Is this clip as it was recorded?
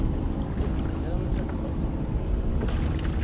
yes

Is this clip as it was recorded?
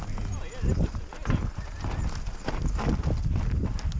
yes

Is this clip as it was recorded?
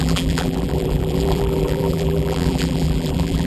no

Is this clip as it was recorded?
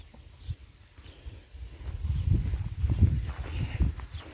yes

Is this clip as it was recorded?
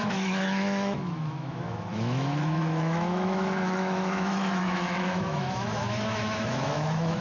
no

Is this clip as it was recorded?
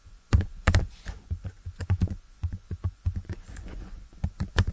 no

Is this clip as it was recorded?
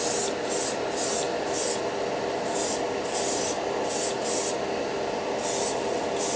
yes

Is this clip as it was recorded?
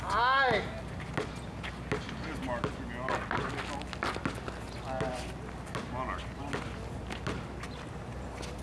yes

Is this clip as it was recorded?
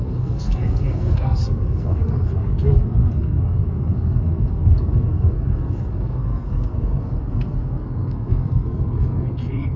no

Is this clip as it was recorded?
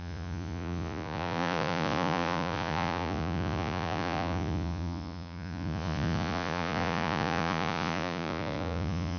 no